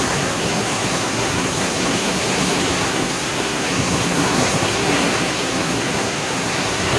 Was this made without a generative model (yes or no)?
no